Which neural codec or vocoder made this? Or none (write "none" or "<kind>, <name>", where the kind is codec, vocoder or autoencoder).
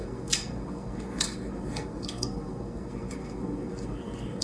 codec, SNAC